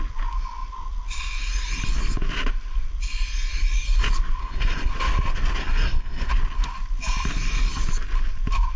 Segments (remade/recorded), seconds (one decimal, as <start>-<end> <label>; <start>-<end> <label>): 0.0-4.4 recorded; 4.4-4.9 remade; 4.9-5.6 recorded; 5.6-6.3 remade; 6.3-8.8 recorded